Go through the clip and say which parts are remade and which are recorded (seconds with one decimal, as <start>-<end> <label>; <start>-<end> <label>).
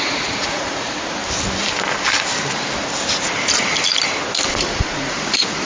0.0-1.2 remade; 1.2-4.6 recorded; 4.6-5.6 remade